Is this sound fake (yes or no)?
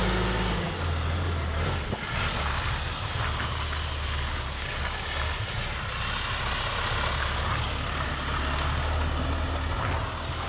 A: no